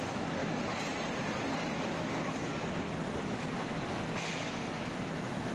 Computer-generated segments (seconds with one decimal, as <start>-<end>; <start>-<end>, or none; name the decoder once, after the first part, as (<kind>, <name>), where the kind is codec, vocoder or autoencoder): 0.0-0.4 (autoencoder, DAC-VAE); 1.8-2.5; 4.8-5.5